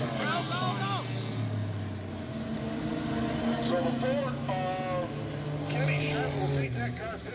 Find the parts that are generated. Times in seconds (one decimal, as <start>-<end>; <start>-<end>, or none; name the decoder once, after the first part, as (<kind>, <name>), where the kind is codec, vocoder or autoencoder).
none